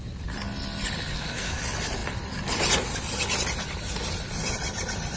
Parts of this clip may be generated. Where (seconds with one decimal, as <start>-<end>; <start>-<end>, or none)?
1.1-1.6

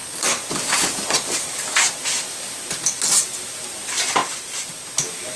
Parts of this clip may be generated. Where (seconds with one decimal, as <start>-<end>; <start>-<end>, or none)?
none

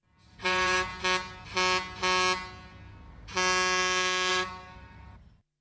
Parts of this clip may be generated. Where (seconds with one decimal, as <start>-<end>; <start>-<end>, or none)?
0.0-0.9; 4.3-5.6

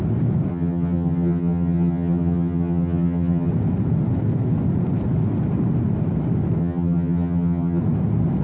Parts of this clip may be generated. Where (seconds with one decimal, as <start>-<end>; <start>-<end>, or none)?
0.5-3.5; 6.6-7.8

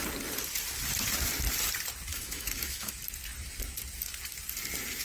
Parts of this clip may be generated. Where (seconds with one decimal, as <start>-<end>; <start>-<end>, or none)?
2.1-2.9

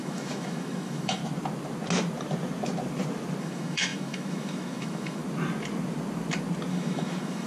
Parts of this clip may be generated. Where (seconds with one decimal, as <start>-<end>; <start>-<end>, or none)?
0.0-1.2; 3.4-5.2; 6.7-7.5

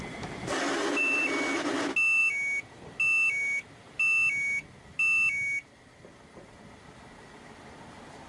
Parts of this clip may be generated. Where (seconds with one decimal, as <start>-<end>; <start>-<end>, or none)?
none

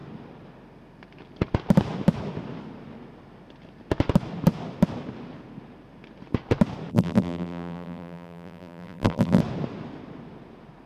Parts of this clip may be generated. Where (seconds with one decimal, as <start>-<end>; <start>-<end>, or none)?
6.9-9.4